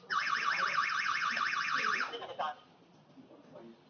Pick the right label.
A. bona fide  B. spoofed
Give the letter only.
A